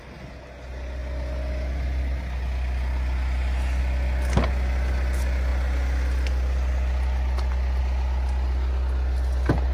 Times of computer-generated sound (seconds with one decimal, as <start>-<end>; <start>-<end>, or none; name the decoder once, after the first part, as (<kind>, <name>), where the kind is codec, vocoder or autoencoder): none